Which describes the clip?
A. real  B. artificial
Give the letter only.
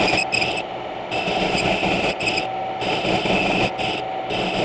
A